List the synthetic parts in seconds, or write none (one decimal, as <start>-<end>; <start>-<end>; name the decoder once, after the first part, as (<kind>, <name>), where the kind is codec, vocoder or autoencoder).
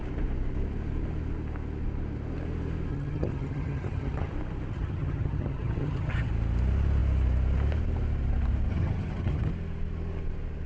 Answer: 2.9-4.3 (vocoder, HiFi-GAN); 4.7-6.3; 8.7-9.5